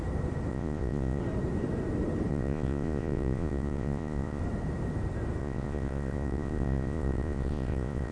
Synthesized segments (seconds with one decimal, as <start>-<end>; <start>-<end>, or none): 0.5-1.2; 2.3-4.4; 5.4-8.1